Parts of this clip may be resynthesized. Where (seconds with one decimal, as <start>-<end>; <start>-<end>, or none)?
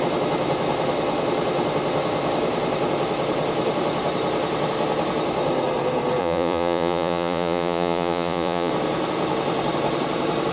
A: 6.2-8.7